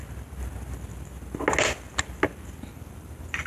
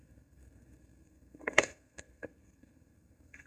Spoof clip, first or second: second